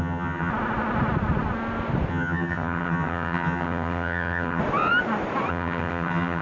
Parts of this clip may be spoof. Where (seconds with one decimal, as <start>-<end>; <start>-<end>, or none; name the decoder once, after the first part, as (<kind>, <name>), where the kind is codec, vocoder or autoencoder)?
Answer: 0.0-0.5 (vocoder, HiFi-GAN); 2.1-4.6; 5.5-6.4